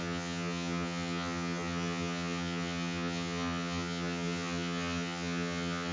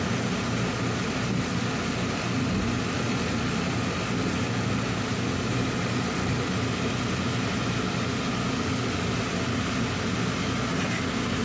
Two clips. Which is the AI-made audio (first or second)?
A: first